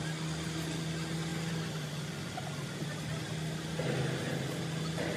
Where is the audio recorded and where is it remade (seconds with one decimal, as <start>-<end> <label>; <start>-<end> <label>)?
0.0-5.2 recorded

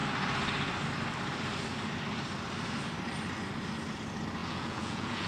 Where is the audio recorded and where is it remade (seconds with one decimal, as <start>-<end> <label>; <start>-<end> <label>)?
0.0-4.4 recorded; 4.4-5.3 remade

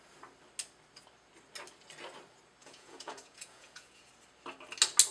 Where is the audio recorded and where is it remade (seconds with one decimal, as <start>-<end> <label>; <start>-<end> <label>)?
0.0-2.6 recorded; 2.6-4.1 remade; 4.1-5.1 recorded

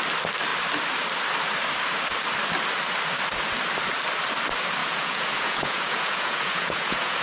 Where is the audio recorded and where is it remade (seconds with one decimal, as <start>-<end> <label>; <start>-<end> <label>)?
0.0-4.8 recorded; 4.8-7.2 remade

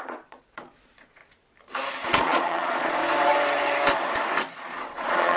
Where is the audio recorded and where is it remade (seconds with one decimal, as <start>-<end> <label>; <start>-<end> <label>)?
0.0-1.2 remade; 1.2-1.9 recorded; 1.9-3.0 remade; 3.0-4.5 recorded; 4.5-5.4 remade

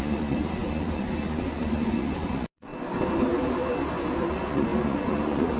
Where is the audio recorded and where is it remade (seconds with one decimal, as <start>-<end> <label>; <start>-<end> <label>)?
0.0-2.7 remade; 2.7-4.3 recorded; 4.3-5.6 remade

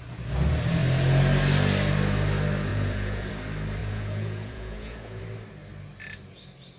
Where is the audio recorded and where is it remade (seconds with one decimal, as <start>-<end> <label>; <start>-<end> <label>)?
0.0-2.7 recorded; 2.7-3.3 remade; 3.3-3.8 recorded; 3.8-5.2 remade; 5.2-6.8 recorded

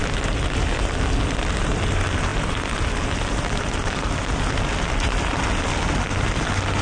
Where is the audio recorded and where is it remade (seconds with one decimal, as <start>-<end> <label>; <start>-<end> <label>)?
0.0-6.8 recorded